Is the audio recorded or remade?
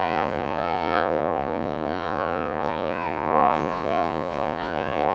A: remade